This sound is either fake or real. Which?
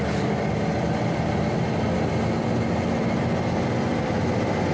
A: real